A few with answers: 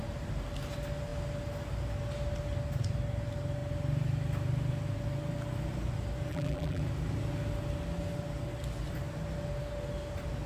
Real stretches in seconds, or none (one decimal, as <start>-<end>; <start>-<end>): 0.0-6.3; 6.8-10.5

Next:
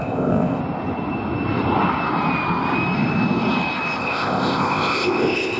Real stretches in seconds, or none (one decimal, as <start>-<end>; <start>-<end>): 0.6-4.0

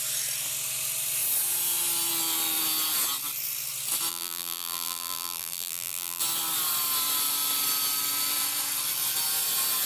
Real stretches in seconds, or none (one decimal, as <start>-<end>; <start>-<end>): 0.0-4.1; 6.2-9.9

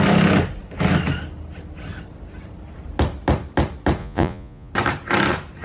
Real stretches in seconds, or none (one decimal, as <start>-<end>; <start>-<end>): 0.0-4.0; 4.7-5.6

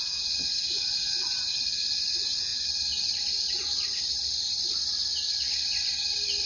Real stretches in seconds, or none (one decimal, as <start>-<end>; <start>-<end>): 0.0-6.5

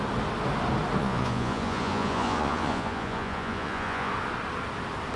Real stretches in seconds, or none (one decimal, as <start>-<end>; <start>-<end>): 0.0-1.0; 4.1-5.2

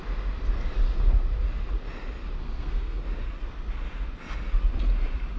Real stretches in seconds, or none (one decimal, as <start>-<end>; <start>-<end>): 0.0-2.4; 3.0-5.4